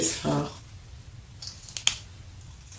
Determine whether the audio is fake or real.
real